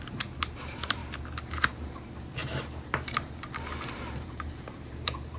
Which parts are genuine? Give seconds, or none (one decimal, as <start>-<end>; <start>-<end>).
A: 1.0-1.5